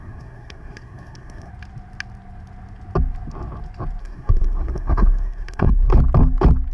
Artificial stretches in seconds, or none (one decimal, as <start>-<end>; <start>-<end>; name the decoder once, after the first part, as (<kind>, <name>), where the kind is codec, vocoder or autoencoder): 0.0-1.5 (codec, SNAC); 4.0-5.9